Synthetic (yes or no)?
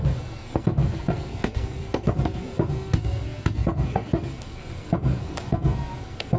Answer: yes